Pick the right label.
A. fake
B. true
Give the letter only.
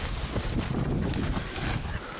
B